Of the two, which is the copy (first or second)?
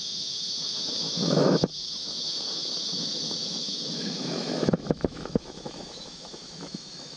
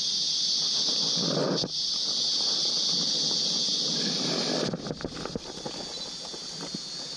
first